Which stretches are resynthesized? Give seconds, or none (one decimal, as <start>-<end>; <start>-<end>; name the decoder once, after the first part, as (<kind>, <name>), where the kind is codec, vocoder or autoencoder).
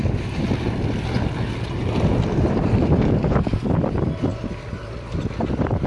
none